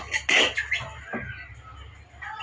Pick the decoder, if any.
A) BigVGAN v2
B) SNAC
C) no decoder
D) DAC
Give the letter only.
C